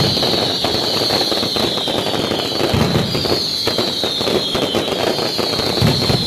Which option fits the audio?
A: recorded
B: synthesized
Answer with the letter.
A